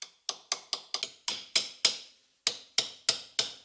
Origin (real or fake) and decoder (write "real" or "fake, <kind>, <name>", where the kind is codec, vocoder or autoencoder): real